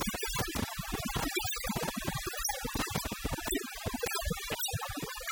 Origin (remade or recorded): recorded